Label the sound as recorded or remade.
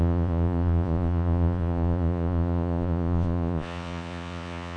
remade